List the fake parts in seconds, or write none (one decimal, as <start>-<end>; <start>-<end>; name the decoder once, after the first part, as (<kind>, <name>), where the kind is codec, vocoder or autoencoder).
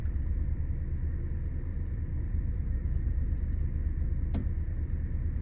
0.0-0.6 (vocoder, BigVGAN v2); 1.7-3.6; 4.4-5.4